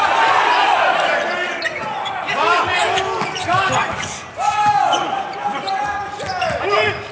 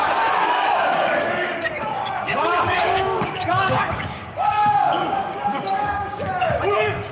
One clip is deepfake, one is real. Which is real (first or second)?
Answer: first